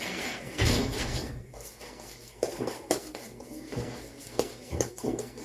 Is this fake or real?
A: fake